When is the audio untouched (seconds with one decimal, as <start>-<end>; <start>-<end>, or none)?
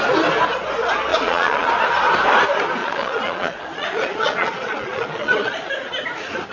0.0-1.1; 1.7-2.8; 5.7-6.5